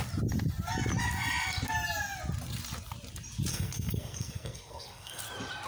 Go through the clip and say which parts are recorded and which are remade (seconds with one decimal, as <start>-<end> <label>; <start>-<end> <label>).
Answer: 0.0-3.5 recorded; 3.5-5.2 remade; 5.2-5.7 recorded